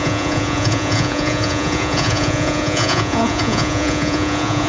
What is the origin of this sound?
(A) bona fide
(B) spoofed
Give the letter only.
B